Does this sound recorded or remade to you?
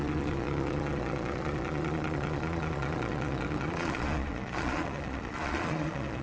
remade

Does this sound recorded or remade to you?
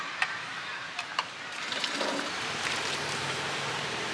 remade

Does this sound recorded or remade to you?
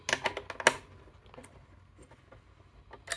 recorded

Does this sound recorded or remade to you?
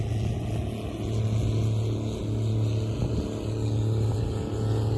recorded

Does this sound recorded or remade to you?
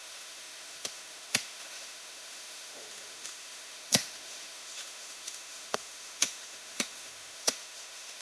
remade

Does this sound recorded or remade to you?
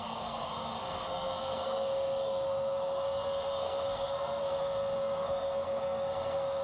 remade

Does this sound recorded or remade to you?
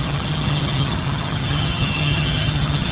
remade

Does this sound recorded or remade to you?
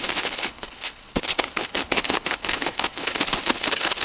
remade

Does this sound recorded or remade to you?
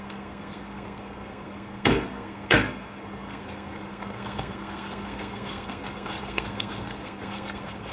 remade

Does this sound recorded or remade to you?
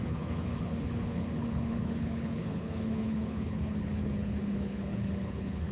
remade